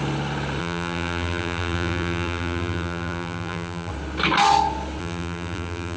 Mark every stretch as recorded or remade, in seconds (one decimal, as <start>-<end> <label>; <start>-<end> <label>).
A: 0.0-0.6 recorded; 0.6-3.9 remade; 3.9-5.0 recorded; 5.0-6.0 remade